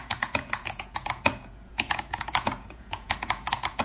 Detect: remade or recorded remade